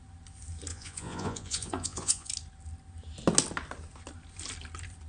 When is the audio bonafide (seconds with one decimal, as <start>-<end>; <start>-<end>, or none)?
0.0-0.7; 2.3-5.1